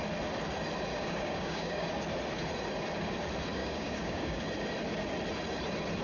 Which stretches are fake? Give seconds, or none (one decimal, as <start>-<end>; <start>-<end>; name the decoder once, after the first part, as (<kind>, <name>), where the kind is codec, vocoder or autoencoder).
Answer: 0.9-1.9 (codec, DAC); 3.6-4.4